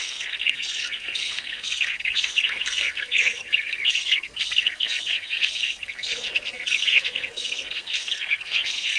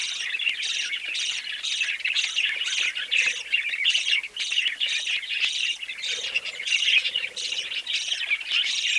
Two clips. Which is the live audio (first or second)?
second